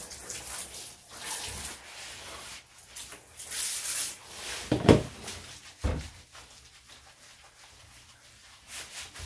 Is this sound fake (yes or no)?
no